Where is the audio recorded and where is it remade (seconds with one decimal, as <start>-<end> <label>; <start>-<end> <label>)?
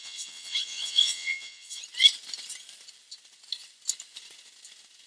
0.0-1.8 remade; 1.8-5.1 recorded